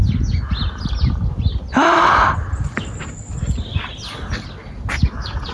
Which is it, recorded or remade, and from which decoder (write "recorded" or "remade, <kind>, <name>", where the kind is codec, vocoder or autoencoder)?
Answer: recorded